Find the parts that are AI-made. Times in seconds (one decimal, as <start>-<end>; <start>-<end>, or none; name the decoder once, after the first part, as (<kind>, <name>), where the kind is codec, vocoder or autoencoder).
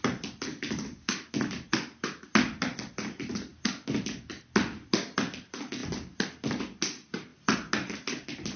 0.5-1.3 (codec, DAC)